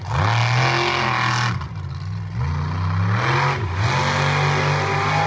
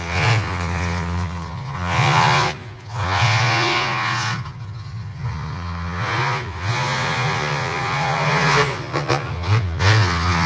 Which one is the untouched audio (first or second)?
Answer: first